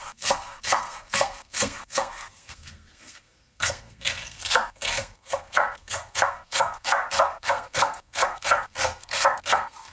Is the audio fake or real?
fake